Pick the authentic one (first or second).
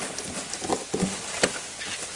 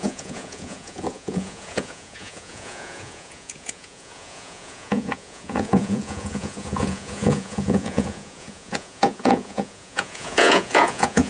first